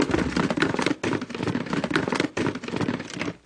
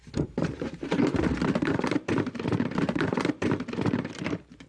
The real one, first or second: first